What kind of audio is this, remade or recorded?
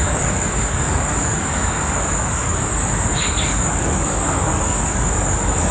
remade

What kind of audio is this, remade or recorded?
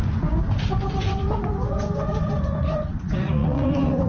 remade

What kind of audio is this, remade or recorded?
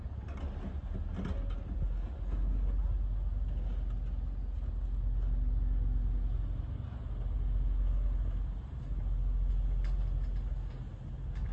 recorded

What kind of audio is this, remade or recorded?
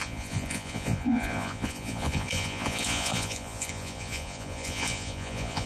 remade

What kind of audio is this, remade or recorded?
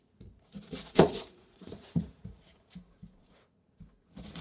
remade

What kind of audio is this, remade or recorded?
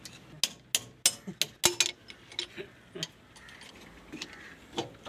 recorded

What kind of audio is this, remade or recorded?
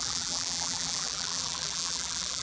remade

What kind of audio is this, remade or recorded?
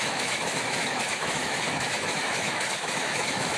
remade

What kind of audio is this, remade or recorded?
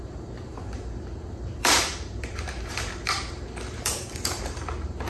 remade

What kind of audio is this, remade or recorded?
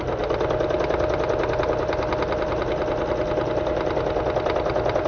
recorded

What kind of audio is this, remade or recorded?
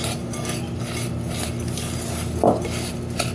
recorded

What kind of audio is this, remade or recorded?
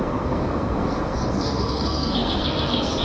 remade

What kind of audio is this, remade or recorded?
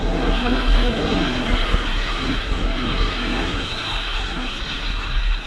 remade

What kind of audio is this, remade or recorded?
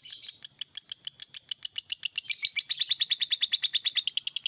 recorded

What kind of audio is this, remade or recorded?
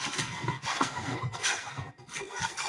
remade